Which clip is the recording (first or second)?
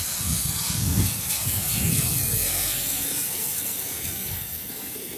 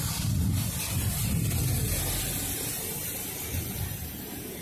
second